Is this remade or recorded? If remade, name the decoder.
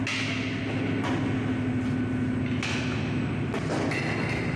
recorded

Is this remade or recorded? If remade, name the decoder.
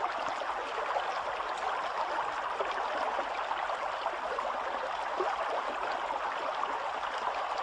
recorded